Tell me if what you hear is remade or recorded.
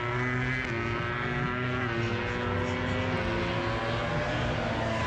recorded